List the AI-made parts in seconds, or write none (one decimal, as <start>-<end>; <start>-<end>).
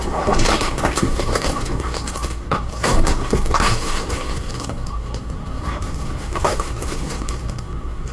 0.0-8.1